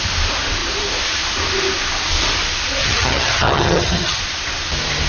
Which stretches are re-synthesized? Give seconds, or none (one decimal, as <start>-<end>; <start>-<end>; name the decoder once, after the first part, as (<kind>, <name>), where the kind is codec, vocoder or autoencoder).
2.8-4.2 (vocoder, HiFi-GAN)